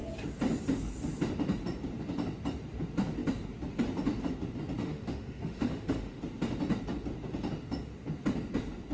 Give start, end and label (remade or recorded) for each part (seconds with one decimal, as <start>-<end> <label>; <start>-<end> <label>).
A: 0.0-4.8 recorded; 4.8-6.2 remade; 6.2-8.9 recorded